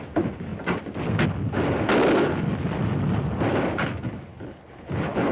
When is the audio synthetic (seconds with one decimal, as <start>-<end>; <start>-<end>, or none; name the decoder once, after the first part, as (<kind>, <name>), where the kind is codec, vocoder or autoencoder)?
4.3-5.3 (codec, HILCodec)